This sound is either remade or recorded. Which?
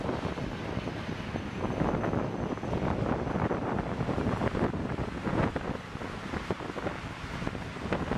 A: recorded